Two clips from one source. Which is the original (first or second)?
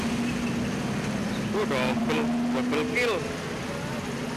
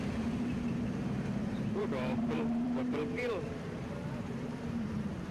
first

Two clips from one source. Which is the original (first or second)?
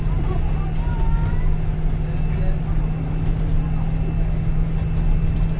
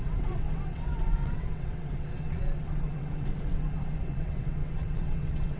first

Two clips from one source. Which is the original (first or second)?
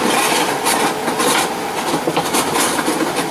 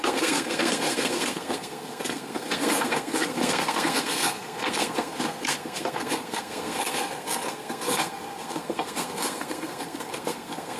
first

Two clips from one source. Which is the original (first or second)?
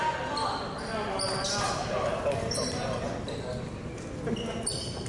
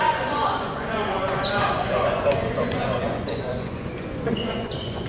first